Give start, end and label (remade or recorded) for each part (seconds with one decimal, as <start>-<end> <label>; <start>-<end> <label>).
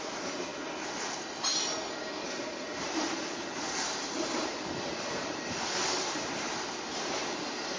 0.0-0.5 remade; 0.5-2.3 recorded; 2.3-7.8 remade